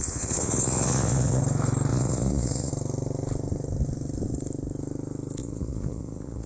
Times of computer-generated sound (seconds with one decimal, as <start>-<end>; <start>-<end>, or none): 0.0-1.4; 1.9-2.7; 5.4-6.5

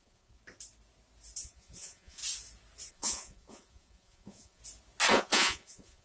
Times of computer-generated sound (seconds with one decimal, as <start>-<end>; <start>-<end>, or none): 0.0-0.4; 1.4-2.2; 2.9-4.6; 5.1-6.0